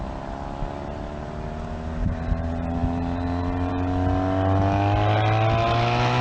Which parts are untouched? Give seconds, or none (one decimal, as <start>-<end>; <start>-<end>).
0.0-6.2